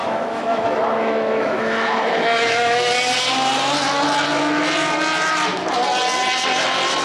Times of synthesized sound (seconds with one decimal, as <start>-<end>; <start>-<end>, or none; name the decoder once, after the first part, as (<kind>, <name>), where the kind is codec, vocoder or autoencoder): 0.0-2.9 (autoencoder, DAC-VAE)